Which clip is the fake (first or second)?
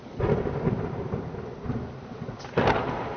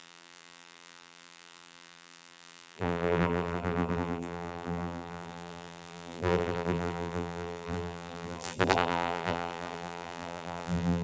second